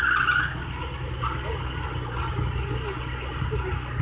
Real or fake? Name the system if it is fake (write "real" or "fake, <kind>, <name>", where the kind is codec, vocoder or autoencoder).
real